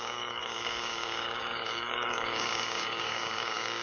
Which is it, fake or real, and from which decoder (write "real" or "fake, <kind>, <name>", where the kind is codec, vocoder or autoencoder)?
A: fake, codec, DAC